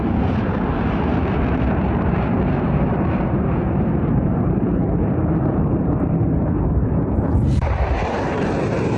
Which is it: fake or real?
fake